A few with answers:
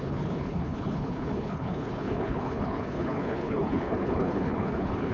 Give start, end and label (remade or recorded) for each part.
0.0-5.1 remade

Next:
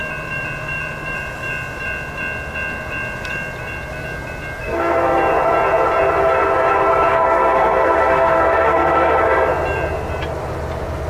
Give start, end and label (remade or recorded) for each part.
0.0-4.6 recorded; 4.6-5.2 remade; 5.2-7.1 recorded; 7.1-9.5 remade; 9.5-11.1 recorded

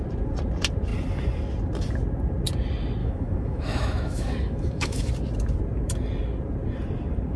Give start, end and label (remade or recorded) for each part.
0.0-3.0 recorded; 3.0-5.1 remade; 5.1-7.4 recorded

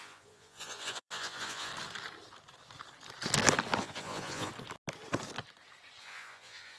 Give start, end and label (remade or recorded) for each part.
0.0-1.7 remade; 1.7-3.8 recorded; 3.8-4.5 remade; 4.5-6.0 recorded; 6.0-6.8 remade

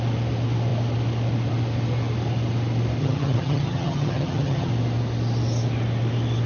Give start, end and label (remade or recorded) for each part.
0.0-3.0 recorded; 3.0-4.7 remade; 4.7-6.5 recorded

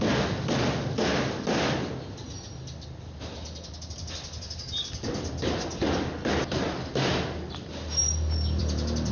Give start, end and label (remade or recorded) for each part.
0.0-9.1 recorded

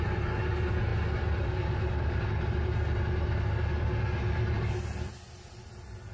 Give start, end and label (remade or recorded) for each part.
0.0-6.1 recorded

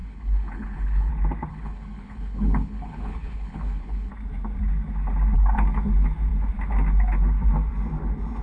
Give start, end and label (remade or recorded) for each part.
0.0-1.1 remade; 1.1-1.5 recorded; 1.5-4.1 remade; 4.1-8.4 recorded